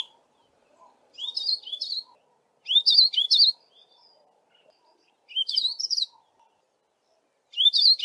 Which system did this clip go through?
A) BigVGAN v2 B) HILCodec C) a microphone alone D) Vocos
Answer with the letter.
C